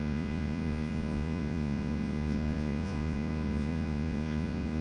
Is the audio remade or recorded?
remade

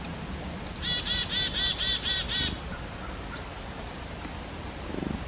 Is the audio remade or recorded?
recorded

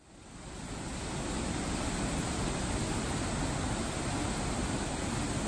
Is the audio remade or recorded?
recorded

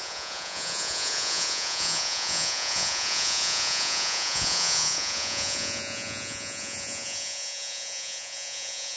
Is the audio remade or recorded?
remade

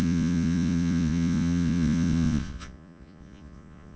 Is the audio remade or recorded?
remade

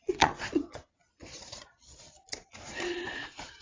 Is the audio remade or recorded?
remade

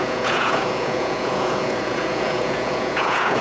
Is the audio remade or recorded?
remade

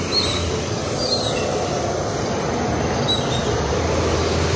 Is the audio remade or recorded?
recorded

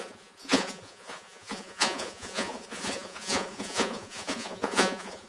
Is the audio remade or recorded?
remade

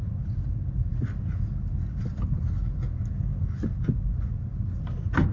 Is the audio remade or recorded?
recorded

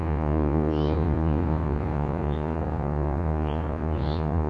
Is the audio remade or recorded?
remade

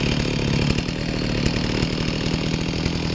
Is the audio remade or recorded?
recorded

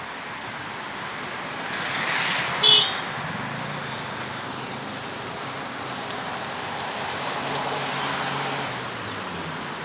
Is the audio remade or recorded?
recorded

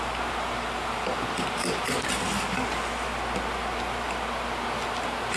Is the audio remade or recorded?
recorded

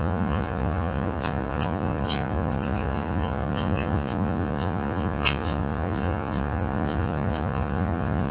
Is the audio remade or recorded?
remade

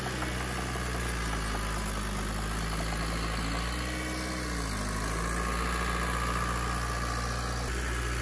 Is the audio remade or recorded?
recorded